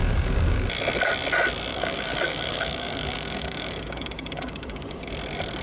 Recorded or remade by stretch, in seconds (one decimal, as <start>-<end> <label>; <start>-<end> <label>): 0.0-0.7 remade; 0.7-1.7 recorded; 1.7-5.1 remade; 5.1-5.6 recorded

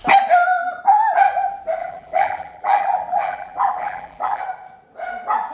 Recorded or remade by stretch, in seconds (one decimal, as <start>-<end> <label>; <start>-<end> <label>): 0.0-1.8 recorded; 1.8-4.4 remade; 4.4-5.5 recorded

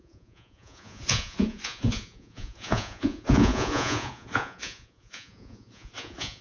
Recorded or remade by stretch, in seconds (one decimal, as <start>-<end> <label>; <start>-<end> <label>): 0.0-6.4 remade

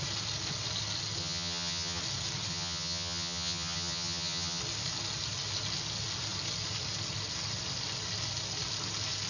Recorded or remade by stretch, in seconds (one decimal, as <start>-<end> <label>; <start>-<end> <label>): 0.0-1.2 recorded; 1.2-2.0 remade; 2.0-2.5 recorded; 2.5-4.6 remade; 4.6-9.3 recorded

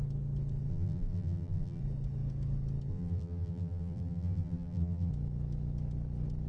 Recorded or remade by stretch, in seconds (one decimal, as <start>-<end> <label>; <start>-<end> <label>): 0.0-0.7 recorded; 0.7-1.8 remade; 1.8-2.9 recorded; 2.9-5.1 remade; 5.1-6.5 recorded

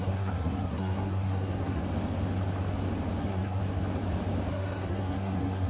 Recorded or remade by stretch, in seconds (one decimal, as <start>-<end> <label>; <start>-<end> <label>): 0.0-1.8 remade; 1.8-3.2 recorded; 3.2-3.6 remade; 3.6-4.5 recorded; 4.5-5.7 remade